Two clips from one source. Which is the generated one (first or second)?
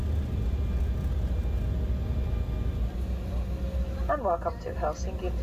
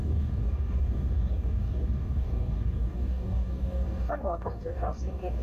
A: second